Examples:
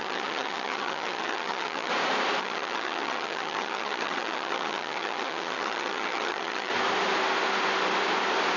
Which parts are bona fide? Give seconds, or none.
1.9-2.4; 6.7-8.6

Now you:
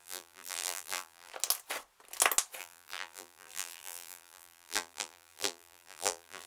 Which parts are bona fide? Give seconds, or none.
1.3-2.6

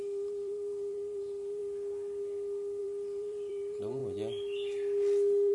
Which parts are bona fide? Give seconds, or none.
1.6-2.8; 4.0-5.5

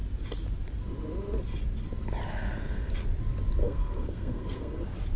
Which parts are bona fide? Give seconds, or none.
0.0-2.3; 2.9-3.6; 4.7-5.2

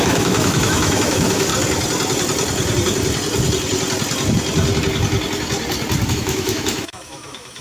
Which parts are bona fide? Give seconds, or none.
1.5-6.1